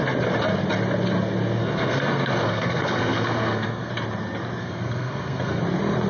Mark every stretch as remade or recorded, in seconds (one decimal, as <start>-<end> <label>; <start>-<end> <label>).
0.0-1.6 recorded; 1.6-3.9 remade; 3.9-4.6 recorded; 4.6-5.6 remade; 5.6-6.1 recorded